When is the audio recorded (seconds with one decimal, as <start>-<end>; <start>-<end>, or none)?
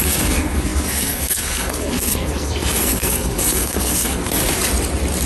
4.4-5.3